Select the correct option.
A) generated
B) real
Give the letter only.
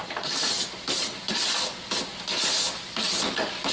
B